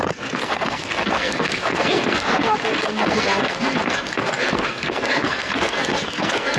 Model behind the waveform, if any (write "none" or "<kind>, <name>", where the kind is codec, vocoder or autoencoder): codec, SNAC